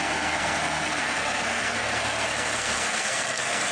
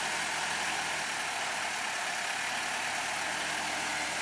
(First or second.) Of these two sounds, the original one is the second